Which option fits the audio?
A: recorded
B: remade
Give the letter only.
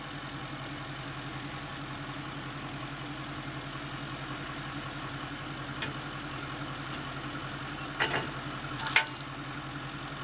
A